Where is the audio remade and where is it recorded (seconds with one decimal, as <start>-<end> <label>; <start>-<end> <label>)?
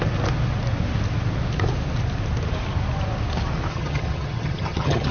0.0-3.7 recorded; 3.7-5.1 remade